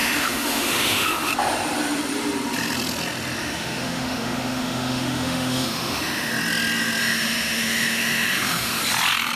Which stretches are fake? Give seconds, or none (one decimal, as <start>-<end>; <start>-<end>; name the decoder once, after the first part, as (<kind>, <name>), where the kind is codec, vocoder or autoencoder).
0.0-1.3 (autoencoder, DAC-VAE); 3.4-6.3; 7.0-8.8